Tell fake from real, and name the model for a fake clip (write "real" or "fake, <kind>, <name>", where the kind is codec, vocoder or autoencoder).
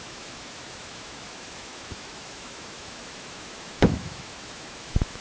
fake, autoencoder, DAC-VAE